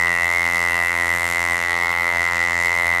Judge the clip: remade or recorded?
remade